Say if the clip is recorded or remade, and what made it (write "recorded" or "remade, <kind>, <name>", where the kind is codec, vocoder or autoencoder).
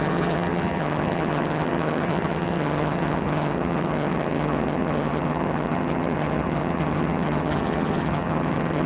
remade, vocoder, HiFi-GAN